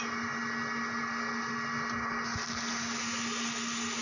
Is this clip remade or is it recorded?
recorded